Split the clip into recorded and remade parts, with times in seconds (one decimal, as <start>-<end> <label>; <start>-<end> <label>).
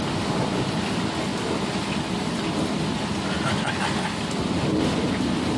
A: 0.0-5.6 recorded